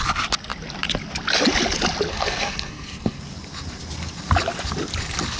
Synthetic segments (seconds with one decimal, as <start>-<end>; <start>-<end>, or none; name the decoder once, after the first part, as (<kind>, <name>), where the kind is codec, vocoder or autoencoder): 2.1-3.2 (codec, SNAC)